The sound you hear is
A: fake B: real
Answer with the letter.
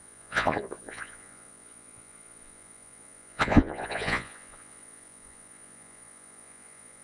A